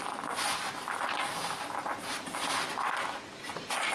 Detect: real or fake real